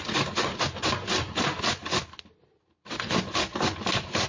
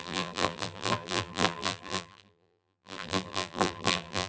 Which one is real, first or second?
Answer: first